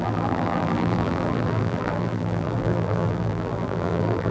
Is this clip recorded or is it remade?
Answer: remade